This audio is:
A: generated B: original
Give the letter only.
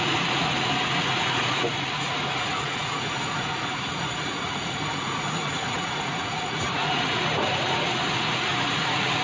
A